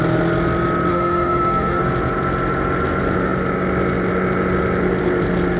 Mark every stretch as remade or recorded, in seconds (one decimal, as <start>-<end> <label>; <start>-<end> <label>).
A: 0.0-0.9 recorded; 0.9-1.8 remade; 1.8-5.6 recorded

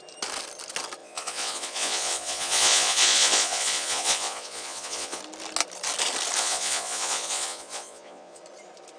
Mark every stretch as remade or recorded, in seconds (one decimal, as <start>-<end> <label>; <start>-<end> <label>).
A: 0.0-1.0 recorded; 1.0-5.2 remade; 5.2-6.4 recorded; 6.4-8.4 remade; 8.4-9.0 recorded

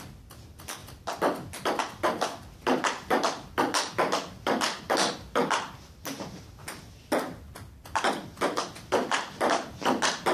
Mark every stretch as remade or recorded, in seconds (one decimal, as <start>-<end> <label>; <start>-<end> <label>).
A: 0.0-10.3 recorded

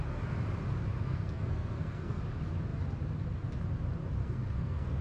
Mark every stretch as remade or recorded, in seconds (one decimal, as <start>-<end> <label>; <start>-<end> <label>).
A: 0.0-1.0 recorded; 1.0-2.2 remade; 2.2-4.2 recorded; 4.2-5.0 remade